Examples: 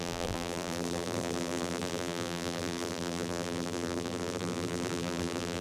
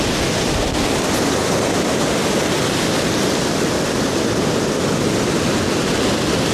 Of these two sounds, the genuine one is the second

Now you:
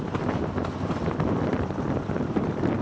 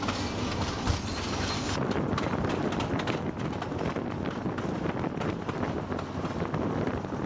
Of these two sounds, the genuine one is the second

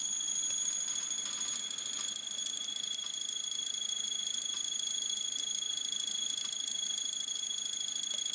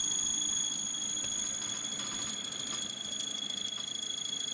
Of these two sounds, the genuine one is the second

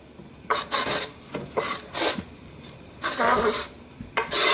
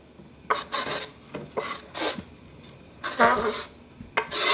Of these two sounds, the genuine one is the second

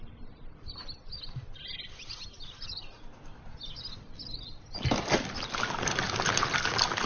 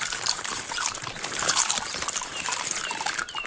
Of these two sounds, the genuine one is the first